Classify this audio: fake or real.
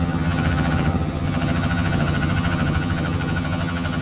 fake